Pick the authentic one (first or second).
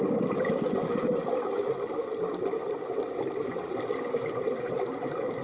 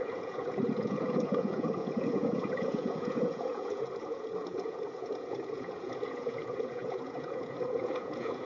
first